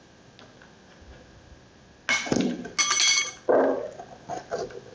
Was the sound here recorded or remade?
recorded